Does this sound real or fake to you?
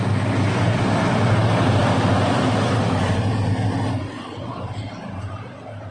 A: real